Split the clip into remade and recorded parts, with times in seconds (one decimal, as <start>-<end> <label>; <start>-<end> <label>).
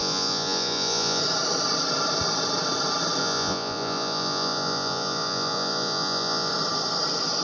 0.0-1.2 remade; 1.2-3.2 recorded; 3.2-6.5 remade; 6.5-7.4 recorded